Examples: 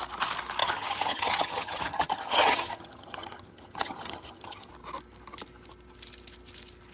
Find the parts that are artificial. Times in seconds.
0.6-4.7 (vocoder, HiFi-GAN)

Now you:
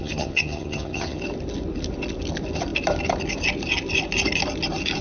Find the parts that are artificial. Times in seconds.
0.0-1.2 (vocoder, HiFi-GAN)

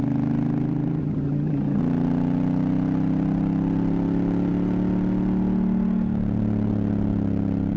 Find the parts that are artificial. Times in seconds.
1.0-1.8 (vocoder, HiFi-GAN)

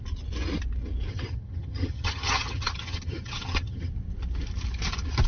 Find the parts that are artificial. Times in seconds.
1.1-3.9 (vocoder, HiFi-GAN)